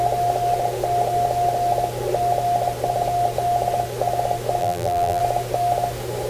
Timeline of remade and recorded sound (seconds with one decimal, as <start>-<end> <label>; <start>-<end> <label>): 0.0-4.6 recorded; 4.6-5.2 remade; 5.2-6.3 recorded